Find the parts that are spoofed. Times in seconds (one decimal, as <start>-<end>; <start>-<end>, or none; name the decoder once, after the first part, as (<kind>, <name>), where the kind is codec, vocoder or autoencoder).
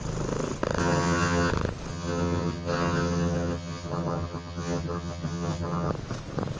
0.8-1.5 (vocoder, HiFi-GAN); 1.9-5.9